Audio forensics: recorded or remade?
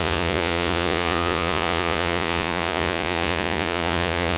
remade